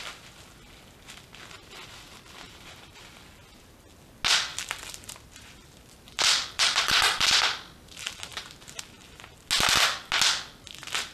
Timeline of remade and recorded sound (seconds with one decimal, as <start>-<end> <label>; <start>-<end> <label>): 0.0-4.5 recorded; 4.5-8.8 remade; 8.8-11.1 recorded